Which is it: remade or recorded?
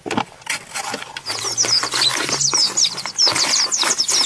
recorded